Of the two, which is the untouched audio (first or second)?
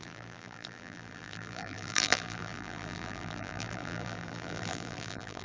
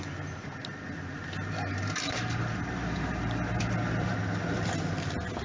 second